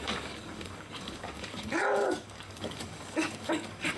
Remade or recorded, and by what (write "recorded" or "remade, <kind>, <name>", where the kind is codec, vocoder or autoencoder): remade, codec, DAC